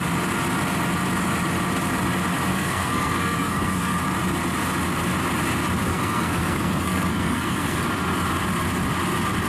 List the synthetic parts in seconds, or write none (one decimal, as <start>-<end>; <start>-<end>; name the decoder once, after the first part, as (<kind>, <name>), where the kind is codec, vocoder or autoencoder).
2.5-4.0 (codec, SNAC); 5.9-7.8